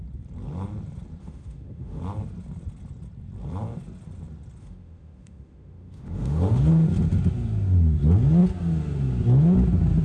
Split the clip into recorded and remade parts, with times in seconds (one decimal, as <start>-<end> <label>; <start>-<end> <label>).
0.0-1.2 recorded; 1.2-2.0 remade; 2.0-4.6 recorded; 4.6-6.7 remade; 6.7-10.0 recorded

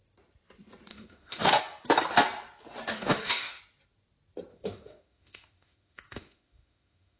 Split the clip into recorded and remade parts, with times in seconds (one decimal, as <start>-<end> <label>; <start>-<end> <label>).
0.0-0.9 recorded; 0.9-1.5 remade; 1.5-2.9 recorded; 2.9-3.6 remade; 3.6-4.5 recorded; 4.5-7.2 remade